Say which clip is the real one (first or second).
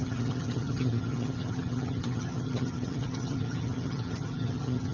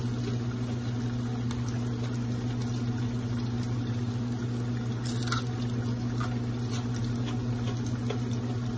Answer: second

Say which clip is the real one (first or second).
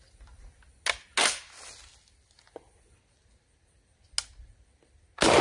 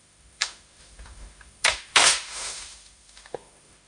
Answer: first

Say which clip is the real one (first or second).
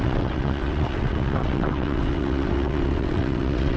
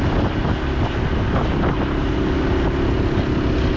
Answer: second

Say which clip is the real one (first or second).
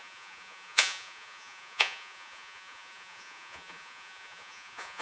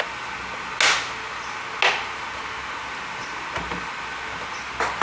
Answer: second